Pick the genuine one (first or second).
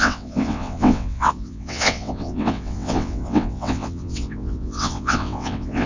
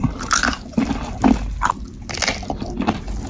second